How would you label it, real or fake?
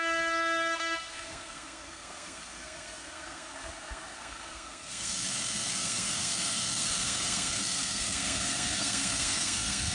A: fake